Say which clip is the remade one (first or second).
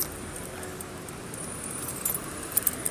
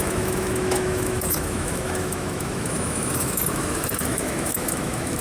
second